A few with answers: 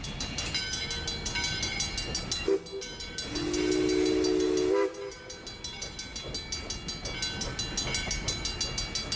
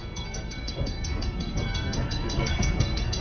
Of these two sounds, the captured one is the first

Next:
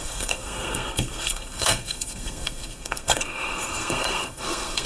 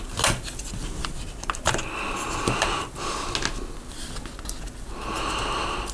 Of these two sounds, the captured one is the second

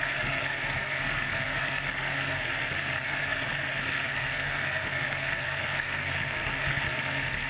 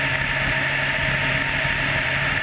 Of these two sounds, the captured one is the second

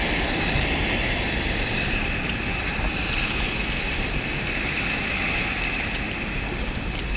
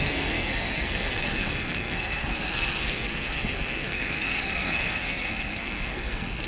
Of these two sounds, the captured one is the first